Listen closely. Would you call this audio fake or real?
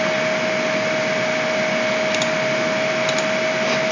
real